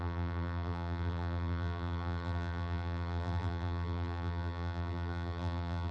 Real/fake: fake